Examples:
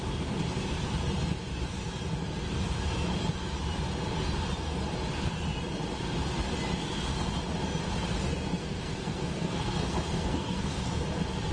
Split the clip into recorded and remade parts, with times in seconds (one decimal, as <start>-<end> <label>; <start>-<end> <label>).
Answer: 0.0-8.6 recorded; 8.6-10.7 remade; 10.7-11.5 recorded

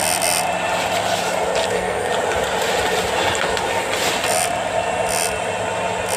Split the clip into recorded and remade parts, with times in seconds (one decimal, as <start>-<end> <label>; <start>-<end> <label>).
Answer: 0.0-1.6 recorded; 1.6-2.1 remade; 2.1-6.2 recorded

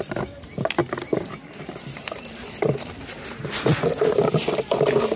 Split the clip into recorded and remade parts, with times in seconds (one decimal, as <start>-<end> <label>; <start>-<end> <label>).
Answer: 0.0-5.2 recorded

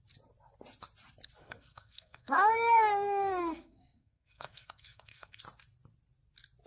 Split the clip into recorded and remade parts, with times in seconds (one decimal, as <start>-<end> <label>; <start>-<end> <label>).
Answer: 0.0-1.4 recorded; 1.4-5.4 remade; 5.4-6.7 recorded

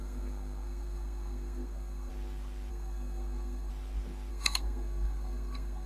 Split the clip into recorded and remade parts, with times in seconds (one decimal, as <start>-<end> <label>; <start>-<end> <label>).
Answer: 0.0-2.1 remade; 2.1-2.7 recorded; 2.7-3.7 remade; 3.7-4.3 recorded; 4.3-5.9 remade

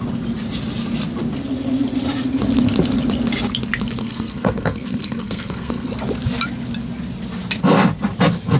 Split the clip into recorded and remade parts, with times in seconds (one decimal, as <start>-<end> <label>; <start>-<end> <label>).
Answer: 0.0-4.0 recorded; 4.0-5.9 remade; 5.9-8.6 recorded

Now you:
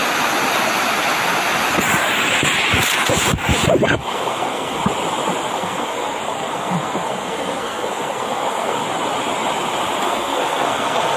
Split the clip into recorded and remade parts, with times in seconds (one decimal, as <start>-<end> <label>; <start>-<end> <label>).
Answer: 0.0-3.8 recorded; 3.8-4.8 remade; 4.8-5.5 recorded; 5.5-8.8 remade; 8.8-10.0 recorded; 10.0-11.2 remade